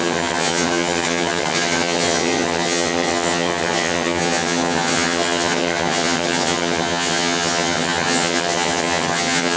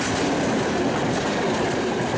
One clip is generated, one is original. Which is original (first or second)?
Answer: second